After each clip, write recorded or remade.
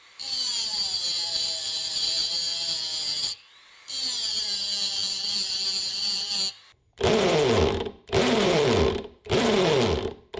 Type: remade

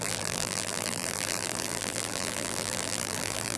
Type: remade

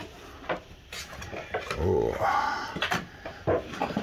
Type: remade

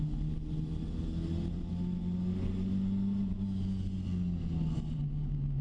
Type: recorded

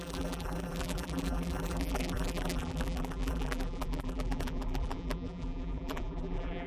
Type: remade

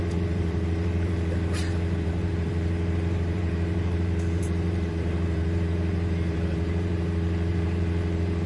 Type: remade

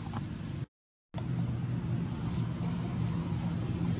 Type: recorded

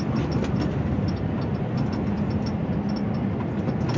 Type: recorded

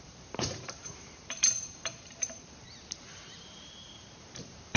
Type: remade